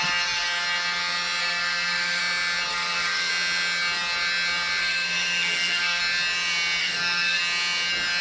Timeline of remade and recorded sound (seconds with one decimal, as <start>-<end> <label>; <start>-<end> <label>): 0.0-1.4 recorded; 1.4-2.2 remade; 2.2-2.7 recorded; 2.7-3.3 remade; 3.3-4.8 recorded; 4.8-6.0 remade; 6.0-6.8 recorded; 6.8-7.4 remade; 7.4-8.2 recorded